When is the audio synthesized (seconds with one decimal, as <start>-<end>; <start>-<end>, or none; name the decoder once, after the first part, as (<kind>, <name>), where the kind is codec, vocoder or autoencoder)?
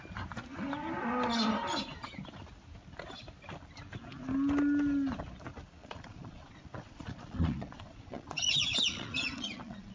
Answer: 5.8-9.9 (vocoder, Vocos)